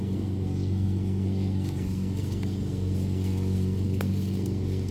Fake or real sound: fake